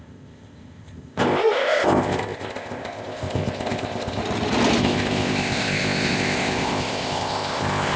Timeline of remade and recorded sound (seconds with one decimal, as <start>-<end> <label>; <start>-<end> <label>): 0.0-4.2 remade; 4.2-4.8 recorded; 4.8-8.0 remade

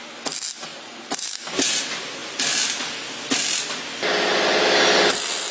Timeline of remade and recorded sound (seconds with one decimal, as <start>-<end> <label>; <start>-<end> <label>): 0.0-0.7 recorded; 0.7-1.8 remade; 1.8-5.5 recorded

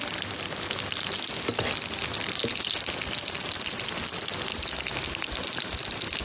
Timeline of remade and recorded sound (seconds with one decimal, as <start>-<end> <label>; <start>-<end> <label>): 0.0-6.2 recorded

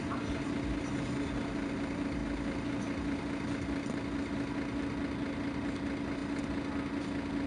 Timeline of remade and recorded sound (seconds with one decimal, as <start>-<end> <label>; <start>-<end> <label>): 0.0-7.5 recorded

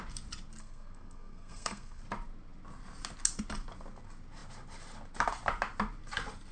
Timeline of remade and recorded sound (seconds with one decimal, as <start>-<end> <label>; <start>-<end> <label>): 0.0-0.6 recorded; 0.6-2.0 remade; 2.0-6.5 recorded

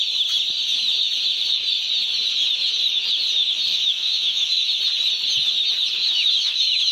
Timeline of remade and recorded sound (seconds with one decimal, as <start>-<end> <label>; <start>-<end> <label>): 0.0-3.7 recorded; 3.7-4.8 remade; 4.8-6.0 recorded; 6.0-6.9 remade

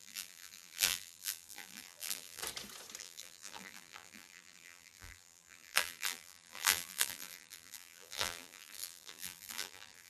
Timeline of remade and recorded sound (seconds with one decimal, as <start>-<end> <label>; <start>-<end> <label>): 0.0-2.4 remade; 2.4-3.0 recorded; 3.0-10.1 remade